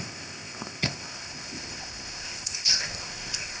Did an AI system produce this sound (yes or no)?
yes